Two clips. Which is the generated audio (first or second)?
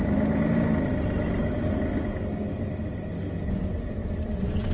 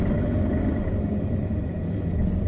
second